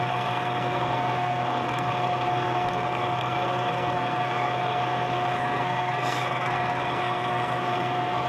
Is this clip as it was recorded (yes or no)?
no